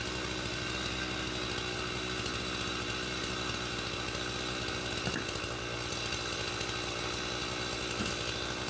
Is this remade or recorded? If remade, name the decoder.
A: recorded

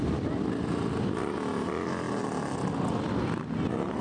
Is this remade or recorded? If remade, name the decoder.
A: recorded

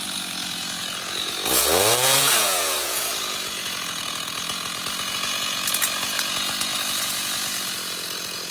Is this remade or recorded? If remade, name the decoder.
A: remade, vocoder, Vocos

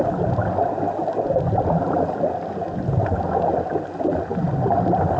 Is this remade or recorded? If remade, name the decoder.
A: recorded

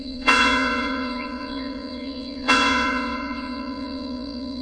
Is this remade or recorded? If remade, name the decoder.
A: remade, vocoder, Vocos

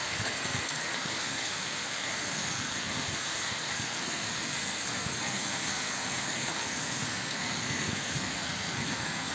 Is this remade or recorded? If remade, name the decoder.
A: remade, codec, SNAC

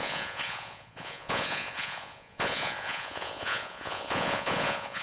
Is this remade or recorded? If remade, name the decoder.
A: remade, vocoder, Vocos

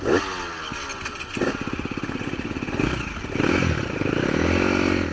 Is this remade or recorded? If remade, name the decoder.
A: recorded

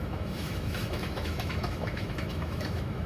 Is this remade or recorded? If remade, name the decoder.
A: remade, autoencoder, DAC-VAE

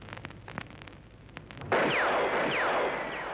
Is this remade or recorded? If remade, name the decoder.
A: recorded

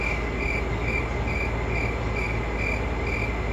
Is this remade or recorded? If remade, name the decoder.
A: recorded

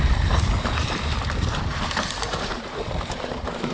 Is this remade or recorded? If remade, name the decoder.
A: remade, vocoder, BigVGAN v2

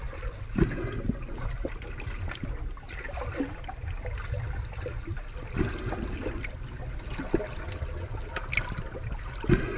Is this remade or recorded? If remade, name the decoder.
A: recorded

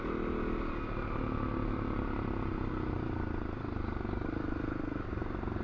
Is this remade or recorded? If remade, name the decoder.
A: recorded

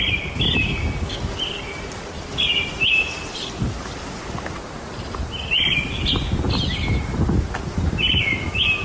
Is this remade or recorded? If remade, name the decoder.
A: recorded